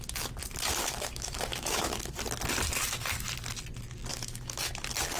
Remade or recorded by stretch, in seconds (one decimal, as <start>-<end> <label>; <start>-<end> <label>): 0.0-0.8 recorded; 0.8-2.1 remade; 2.1-4.1 recorded; 4.1-4.7 remade; 4.7-5.2 recorded